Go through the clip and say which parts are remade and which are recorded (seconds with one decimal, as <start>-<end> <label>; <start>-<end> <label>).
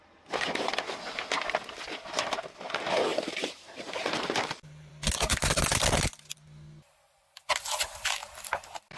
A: 0.0-3.1 recorded; 3.1-4.9 remade; 4.9-9.0 recorded